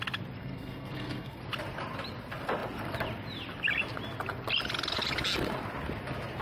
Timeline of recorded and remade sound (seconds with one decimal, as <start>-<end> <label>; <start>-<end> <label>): 0.0-0.4 recorded; 0.4-1.4 remade; 1.4-6.4 recorded